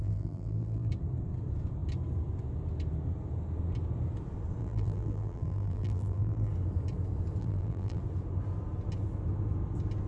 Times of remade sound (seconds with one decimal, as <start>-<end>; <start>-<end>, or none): 0.0-0.9; 4.6-6.5; 7.4-8.0